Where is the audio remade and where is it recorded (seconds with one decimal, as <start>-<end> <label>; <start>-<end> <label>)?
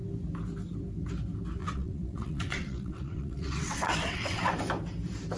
0.0-1.6 recorded; 1.6-4.5 remade; 4.5-5.4 recorded